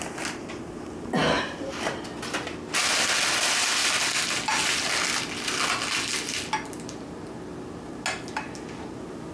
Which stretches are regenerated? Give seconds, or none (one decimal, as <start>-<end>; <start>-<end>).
none